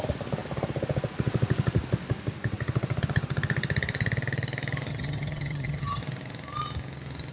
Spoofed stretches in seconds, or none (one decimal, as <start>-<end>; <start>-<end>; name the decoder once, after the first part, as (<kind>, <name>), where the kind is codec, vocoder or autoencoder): 4.9-6.0 (vocoder, HiFi-GAN)